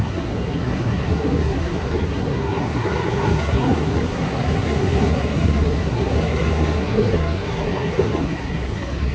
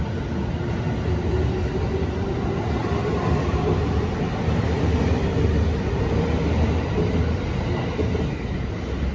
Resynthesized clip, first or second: first